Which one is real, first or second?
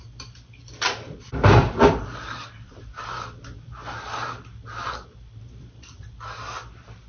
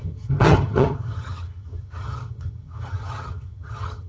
first